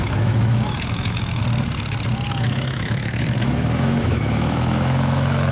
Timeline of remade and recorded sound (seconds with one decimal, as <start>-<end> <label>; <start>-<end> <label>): 0.0-1.4 remade; 1.4-2.3 recorded; 2.3-5.5 remade